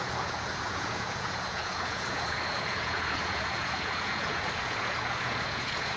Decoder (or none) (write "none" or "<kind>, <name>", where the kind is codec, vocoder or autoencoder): vocoder, Vocos